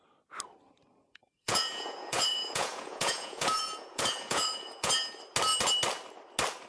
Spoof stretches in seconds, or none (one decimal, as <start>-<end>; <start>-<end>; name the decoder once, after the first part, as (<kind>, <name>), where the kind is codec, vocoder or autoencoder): 0.9-4.9 (vocoder, Vocos)